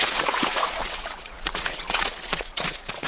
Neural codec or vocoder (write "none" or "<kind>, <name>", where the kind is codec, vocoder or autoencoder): vocoder, Vocos